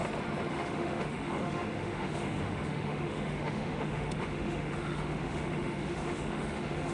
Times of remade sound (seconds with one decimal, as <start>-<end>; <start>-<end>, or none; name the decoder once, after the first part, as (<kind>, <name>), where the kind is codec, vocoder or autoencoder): 0.5-6.9 (autoencoder, DAC-VAE)